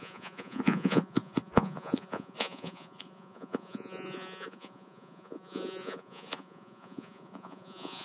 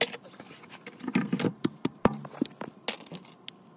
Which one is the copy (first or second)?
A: first